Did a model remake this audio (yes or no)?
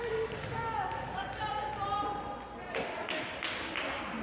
no